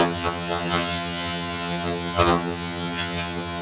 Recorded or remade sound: remade